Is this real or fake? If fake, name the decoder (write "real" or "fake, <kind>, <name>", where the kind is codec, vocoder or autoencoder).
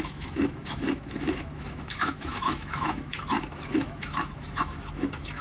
fake, autoencoder, DAC-VAE